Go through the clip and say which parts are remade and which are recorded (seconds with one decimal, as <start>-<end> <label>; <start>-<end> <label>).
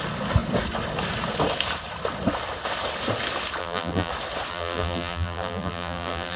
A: 0.0-3.6 recorded; 3.6-4.1 remade; 4.1-4.5 recorded; 4.5-6.4 remade